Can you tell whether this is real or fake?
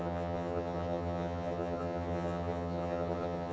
fake